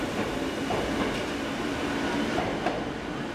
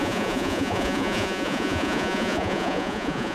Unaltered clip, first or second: first